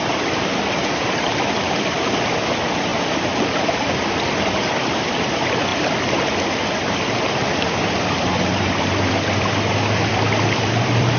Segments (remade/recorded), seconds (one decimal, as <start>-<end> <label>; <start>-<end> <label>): 0.0-5.7 remade; 5.7-8.1 recorded; 8.1-11.2 remade